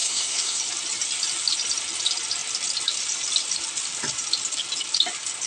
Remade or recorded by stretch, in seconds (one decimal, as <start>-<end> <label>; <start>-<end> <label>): 0.0-0.6 remade; 0.6-5.5 recorded